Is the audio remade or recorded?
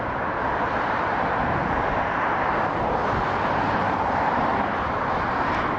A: recorded